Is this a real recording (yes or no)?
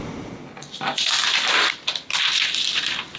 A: yes